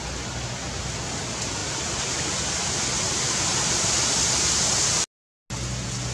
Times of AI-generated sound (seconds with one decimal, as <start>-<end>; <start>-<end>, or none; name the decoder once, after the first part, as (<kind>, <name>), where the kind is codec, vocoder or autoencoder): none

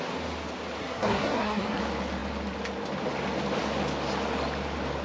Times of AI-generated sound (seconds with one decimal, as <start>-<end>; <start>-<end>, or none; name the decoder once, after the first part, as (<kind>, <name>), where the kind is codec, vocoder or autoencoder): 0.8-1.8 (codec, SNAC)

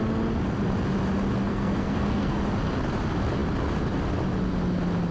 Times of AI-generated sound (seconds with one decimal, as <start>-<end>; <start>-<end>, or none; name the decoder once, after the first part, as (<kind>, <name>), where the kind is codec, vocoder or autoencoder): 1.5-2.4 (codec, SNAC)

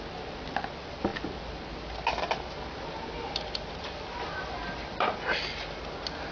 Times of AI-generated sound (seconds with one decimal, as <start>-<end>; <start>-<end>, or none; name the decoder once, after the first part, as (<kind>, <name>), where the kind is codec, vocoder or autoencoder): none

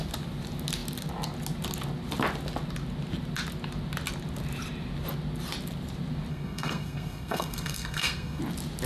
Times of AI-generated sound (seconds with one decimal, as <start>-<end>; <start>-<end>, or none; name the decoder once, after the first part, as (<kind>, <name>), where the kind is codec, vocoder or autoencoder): 6.3-8.4 (codec, SNAC)